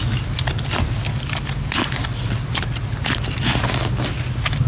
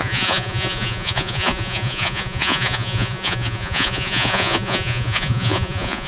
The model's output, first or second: second